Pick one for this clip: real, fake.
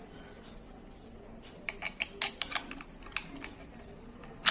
real